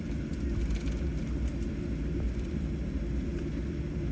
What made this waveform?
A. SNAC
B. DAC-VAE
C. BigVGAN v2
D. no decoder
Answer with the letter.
D